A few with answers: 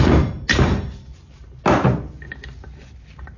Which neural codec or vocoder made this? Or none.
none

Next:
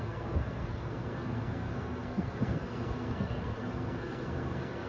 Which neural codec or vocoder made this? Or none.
codec, SNAC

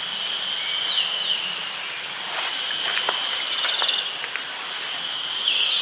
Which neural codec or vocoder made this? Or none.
none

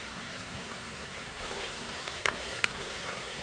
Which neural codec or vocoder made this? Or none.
codec, SNAC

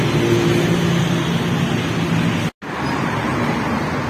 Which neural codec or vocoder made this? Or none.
none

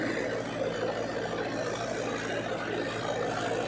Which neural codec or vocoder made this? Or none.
none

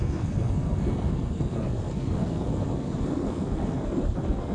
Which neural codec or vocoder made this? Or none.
codec, SNAC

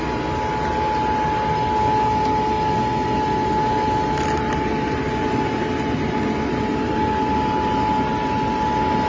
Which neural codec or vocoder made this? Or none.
none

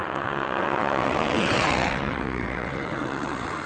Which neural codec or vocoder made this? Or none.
vocoder, WaveNeXt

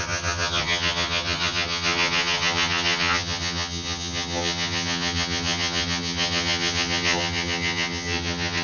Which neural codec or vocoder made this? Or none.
vocoder, HiFi-GAN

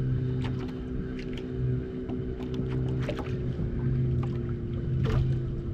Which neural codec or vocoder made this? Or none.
none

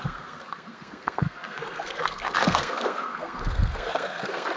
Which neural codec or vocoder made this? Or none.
codec, SNAC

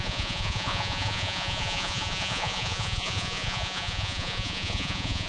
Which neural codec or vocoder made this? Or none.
vocoder, Vocos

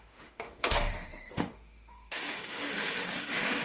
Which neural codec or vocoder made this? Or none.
autoencoder, DAC-VAE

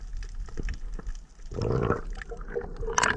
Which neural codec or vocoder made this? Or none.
none